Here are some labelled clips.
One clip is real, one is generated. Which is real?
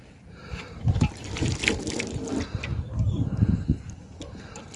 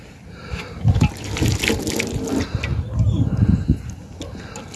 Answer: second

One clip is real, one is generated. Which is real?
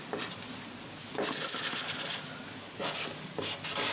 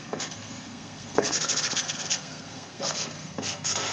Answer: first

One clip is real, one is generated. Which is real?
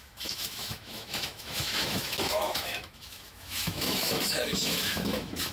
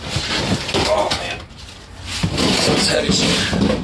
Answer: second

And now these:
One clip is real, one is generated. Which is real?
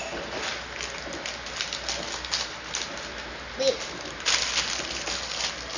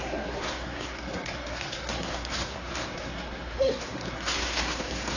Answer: first